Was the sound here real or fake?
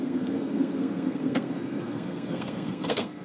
fake